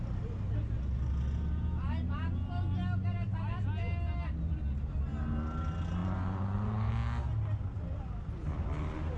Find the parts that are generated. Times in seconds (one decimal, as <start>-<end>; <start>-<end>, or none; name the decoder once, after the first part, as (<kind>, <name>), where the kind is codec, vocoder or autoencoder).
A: 6.0-6.9 (vocoder, Vocos)